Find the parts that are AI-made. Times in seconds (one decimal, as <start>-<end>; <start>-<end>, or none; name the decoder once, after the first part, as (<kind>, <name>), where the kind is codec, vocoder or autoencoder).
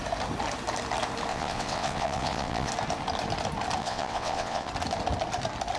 1.3-2.7 (vocoder, WaveNeXt); 3.8-4.7